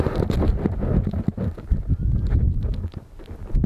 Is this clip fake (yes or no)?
no